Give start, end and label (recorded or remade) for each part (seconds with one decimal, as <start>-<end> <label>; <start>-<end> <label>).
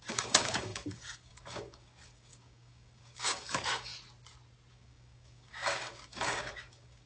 0.0-3.9 remade; 3.9-4.7 recorded; 4.7-7.1 remade